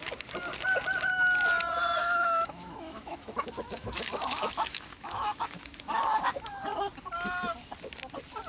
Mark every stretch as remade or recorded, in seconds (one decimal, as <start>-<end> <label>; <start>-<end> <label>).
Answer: 0.0-2.0 recorded; 2.0-6.6 remade; 6.6-8.5 recorded